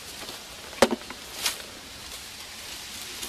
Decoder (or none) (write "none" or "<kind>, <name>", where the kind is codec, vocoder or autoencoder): none